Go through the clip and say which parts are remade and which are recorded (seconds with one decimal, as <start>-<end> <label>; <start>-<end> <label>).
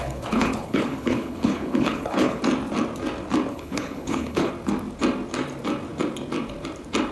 0.0-2.4 remade; 2.4-3.5 recorded; 3.5-4.5 remade; 4.5-7.1 recorded